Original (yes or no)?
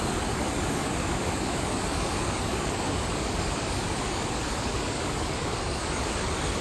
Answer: no